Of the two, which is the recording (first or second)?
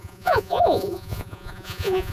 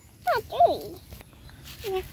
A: second